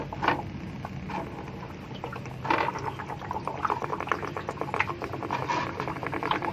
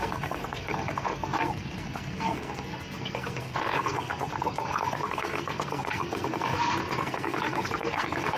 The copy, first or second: second